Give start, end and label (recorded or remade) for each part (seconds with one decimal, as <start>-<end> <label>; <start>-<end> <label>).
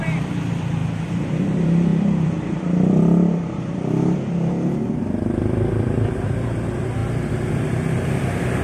0.0-0.8 remade; 0.8-1.4 recorded; 1.4-7.0 remade; 7.0-7.5 recorded; 7.5-8.6 remade